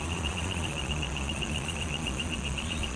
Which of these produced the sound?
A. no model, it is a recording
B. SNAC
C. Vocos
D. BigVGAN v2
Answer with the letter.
C